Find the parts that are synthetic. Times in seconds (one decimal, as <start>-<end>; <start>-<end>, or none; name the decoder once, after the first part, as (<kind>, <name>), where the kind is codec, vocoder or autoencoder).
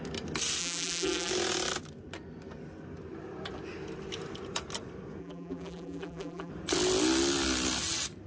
0.6-1.3 (vocoder, BigVGAN v2); 5.2-6.5